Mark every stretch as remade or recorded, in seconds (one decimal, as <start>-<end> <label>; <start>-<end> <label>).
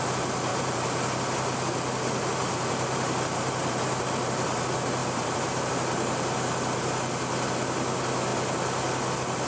0.0-0.5 recorded; 0.5-1.2 remade; 1.2-2.4 recorded; 2.4-4.6 remade; 4.6-5.0 recorded; 5.0-5.7 remade; 5.7-9.5 recorded